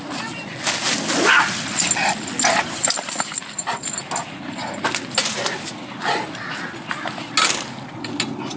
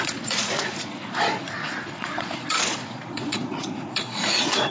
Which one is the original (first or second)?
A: first